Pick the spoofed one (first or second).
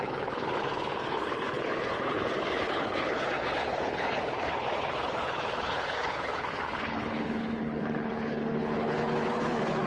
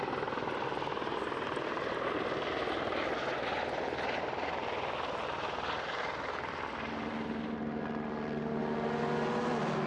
first